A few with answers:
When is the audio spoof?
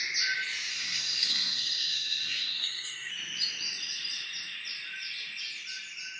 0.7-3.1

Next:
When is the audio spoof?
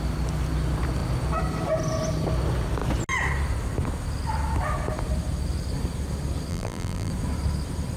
6.5-7.1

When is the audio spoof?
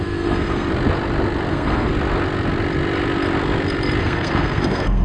0.0-0.7; 1.5-1.9; 4.0-5.0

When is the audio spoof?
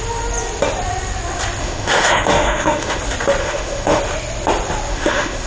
1.6-3.0; 3.4-4.0; 4.9-5.5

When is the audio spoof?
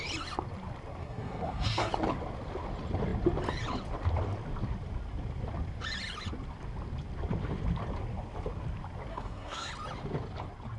1.0-1.9; 9.1-9.7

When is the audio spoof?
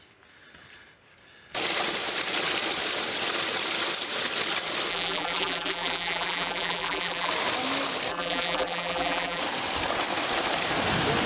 4.9-7.3; 8.1-9.4